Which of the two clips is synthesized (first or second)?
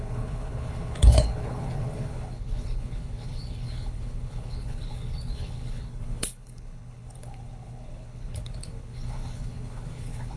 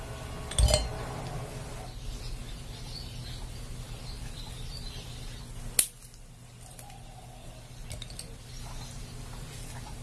first